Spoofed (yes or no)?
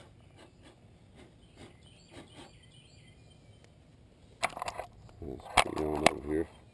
no